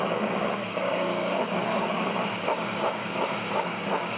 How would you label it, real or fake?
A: fake